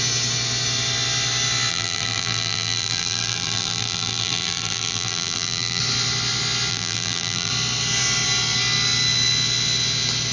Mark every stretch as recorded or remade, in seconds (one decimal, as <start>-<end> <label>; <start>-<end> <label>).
0.0-1.7 recorded; 1.7-5.8 remade; 5.8-6.7 recorded; 6.7-7.5 remade; 7.5-10.3 recorded